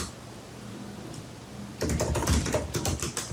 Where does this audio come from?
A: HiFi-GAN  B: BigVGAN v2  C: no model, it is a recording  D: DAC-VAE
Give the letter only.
B